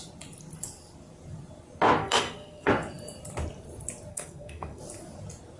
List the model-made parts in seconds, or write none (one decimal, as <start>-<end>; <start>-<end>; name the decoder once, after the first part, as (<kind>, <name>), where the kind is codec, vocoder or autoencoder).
2.0-2.7 (codec, SNAC); 4.1-4.8